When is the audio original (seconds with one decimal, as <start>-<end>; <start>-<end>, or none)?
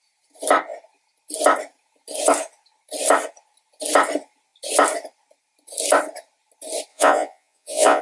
0.0-6.9